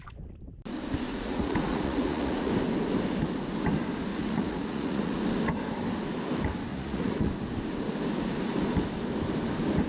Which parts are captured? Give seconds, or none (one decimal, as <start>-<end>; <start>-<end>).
0.0-1.1; 2.5-4.1; 5.2-6.7; 7.3-9.9